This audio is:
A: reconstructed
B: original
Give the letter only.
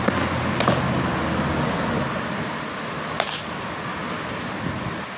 B